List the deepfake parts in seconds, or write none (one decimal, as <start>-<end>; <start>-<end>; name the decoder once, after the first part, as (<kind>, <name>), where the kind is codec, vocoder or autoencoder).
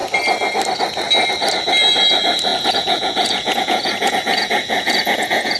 2.5-5.6 (vocoder, Vocos)